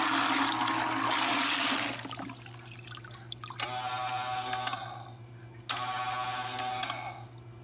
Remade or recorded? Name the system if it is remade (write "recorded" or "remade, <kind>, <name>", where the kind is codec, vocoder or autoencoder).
recorded